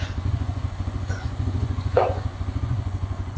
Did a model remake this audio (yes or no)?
yes